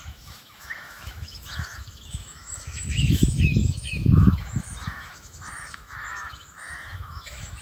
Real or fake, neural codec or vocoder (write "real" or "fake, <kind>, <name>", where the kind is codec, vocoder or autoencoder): fake, autoencoder, DAC-VAE